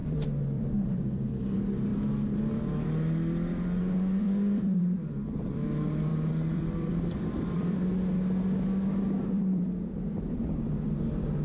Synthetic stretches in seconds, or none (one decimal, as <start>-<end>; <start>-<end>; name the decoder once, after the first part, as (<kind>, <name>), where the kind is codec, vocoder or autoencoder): 0.0-1.9 (vocoder, BigVGAN v2); 4.2-7.9; 9.2-11.4

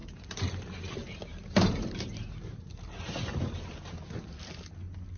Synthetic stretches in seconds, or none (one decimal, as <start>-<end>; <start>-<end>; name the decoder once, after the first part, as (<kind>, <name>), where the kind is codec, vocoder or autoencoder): 1.3-4.4 (vocoder, BigVGAN v2)

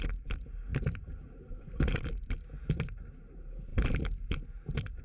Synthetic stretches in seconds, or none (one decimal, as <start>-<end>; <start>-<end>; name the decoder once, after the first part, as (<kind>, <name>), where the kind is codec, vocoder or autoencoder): 0.0-5.0 (vocoder, BigVGAN v2)

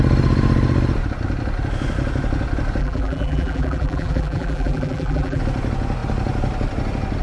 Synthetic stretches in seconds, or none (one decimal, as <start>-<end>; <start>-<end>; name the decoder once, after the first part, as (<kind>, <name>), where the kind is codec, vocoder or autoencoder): 2.8-5.4 (vocoder, BigVGAN v2)